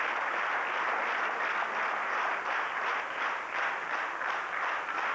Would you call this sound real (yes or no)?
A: yes